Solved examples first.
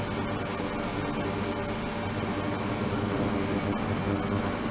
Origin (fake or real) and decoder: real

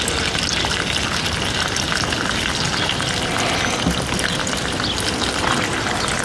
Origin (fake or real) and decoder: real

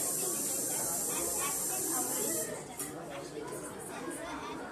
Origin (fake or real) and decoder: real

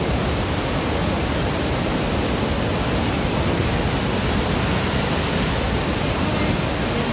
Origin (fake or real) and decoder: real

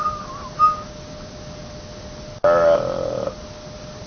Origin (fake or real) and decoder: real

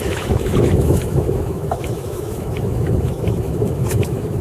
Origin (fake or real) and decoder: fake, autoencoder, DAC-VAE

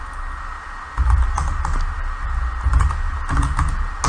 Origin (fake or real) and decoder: real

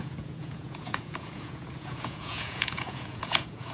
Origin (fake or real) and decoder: fake, vocoder, Vocos